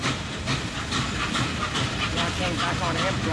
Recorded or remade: recorded